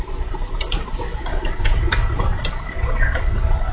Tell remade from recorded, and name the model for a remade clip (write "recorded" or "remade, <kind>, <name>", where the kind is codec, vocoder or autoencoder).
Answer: recorded